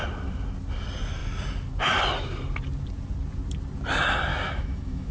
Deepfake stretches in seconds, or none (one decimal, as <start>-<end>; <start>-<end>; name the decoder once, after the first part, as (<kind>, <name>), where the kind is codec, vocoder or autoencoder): 4.3-5.1 (autoencoder, DAC-VAE)